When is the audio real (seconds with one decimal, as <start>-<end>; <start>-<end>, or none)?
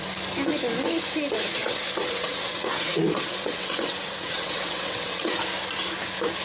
0.0-1.6; 5.4-6.4